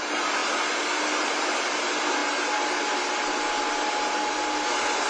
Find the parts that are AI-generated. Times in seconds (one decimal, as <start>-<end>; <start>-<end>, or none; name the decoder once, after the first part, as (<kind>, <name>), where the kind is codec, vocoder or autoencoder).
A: none